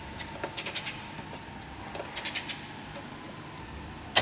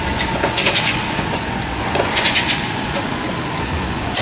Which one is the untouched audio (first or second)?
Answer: first